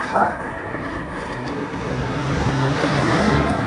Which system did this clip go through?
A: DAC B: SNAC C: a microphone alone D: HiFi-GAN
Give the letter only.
B